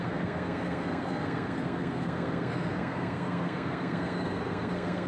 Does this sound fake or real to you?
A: fake